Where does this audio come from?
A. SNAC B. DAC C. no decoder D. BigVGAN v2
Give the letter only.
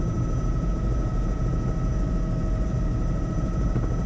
C